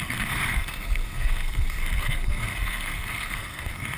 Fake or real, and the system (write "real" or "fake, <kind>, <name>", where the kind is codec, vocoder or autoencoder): fake, codec, SNAC